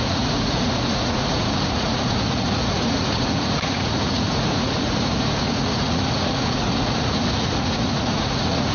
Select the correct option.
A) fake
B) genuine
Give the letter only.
A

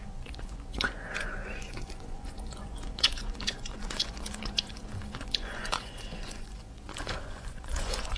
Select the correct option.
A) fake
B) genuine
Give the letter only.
A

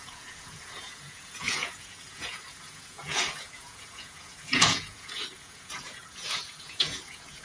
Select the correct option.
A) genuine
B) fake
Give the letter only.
B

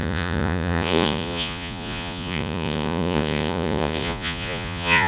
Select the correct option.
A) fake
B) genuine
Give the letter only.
A